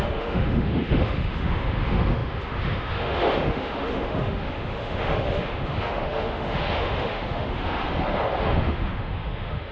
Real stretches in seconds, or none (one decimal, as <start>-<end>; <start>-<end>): 7.8-8.4

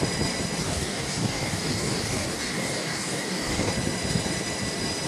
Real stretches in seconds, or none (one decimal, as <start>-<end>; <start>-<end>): 0.0-0.6; 3.7-5.1

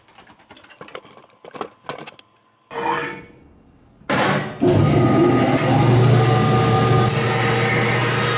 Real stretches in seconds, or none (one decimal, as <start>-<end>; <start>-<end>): 0.0-8.4

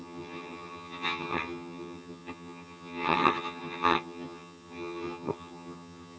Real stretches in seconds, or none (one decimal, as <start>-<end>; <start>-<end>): none